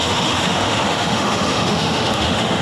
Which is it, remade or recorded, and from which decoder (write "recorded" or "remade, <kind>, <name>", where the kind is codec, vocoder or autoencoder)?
remade, autoencoder, DAC-VAE